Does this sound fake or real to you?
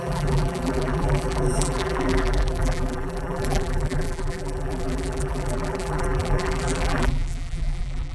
fake